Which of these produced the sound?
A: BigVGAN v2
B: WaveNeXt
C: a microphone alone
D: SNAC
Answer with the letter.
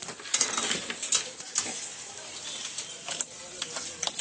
C